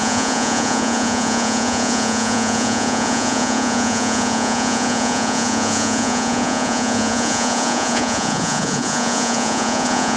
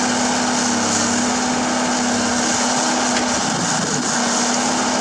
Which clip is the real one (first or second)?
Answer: second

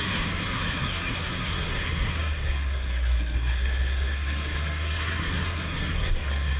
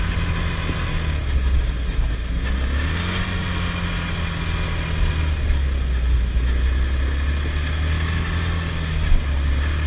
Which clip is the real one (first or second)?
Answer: second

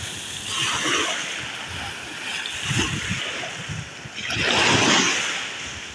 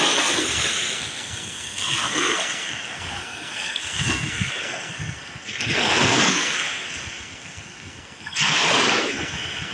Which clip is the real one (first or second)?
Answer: first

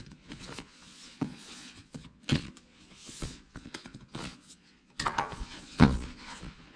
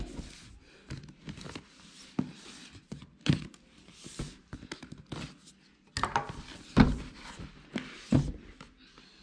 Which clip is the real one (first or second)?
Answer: second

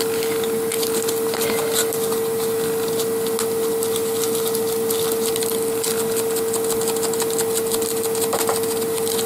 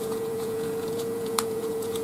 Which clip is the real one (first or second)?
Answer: first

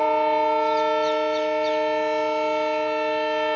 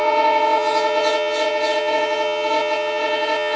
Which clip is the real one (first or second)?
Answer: first